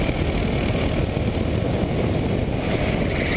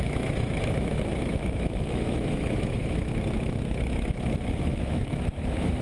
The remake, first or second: second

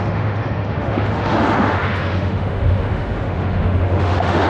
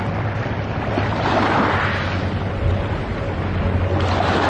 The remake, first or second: first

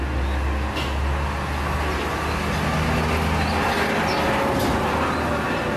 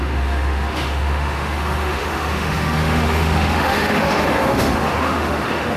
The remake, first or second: second